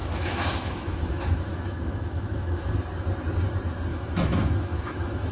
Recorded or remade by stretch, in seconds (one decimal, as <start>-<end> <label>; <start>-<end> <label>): 0.0-2.7 remade; 2.7-3.9 recorded; 3.9-5.3 remade